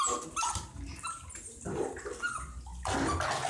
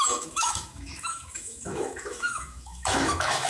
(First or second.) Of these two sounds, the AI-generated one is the second